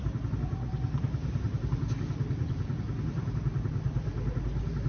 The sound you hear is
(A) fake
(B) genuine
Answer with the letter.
B